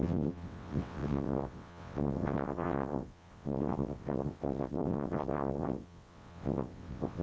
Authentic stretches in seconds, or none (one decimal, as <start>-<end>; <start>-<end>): none